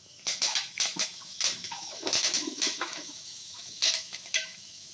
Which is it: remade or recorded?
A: remade